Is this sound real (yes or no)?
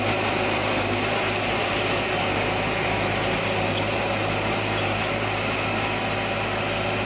yes